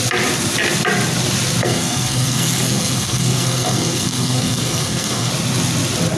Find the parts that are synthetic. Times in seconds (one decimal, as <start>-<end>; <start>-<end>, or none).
1.6-5.3